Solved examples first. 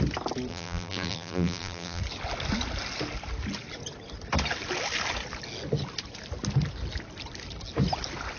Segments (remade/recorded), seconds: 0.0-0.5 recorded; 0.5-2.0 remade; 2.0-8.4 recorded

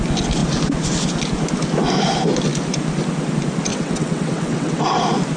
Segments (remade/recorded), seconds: 0.0-3.7 recorded; 3.7-5.0 remade; 5.0-5.4 recorded

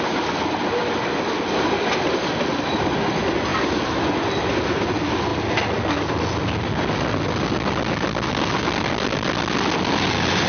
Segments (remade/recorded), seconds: 0.0-10.5 recorded

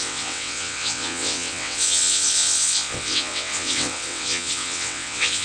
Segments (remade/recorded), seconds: 0.0-5.4 remade

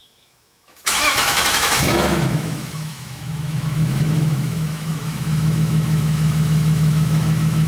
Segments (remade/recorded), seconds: 0.0-7.7 remade